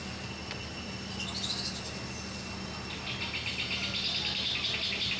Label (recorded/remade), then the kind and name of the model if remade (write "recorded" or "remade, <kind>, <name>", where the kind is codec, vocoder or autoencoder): recorded